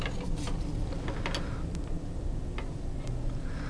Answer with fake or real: real